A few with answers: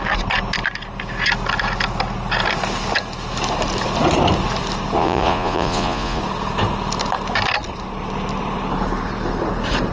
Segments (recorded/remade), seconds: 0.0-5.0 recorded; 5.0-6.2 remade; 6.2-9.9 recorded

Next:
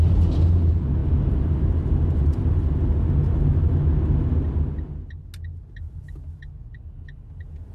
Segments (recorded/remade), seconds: 0.0-7.7 recorded

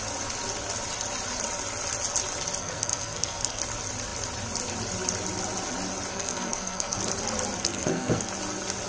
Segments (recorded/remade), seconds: 0.0-2.6 recorded; 2.6-3.6 remade; 3.6-6.1 recorded; 6.1-7.0 remade; 7.0-7.6 recorded; 7.6-8.3 remade; 8.3-8.9 recorded

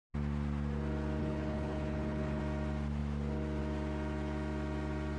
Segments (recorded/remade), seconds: 0.0-1.2 recorded; 1.2-2.4 remade; 2.4-5.2 recorded

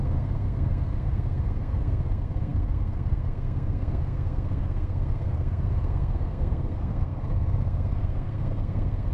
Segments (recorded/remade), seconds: 0.0-9.1 remade

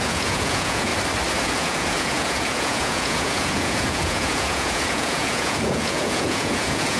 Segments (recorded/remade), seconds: 0.0-0.9 remade; 0.9-1.4 recorded; 1.4-7.0 remade